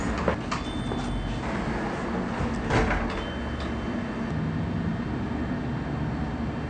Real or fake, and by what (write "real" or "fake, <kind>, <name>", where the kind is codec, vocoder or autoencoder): real